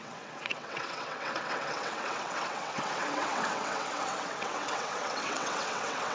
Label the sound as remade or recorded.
remade